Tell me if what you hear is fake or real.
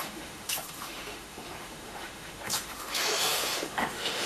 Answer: fake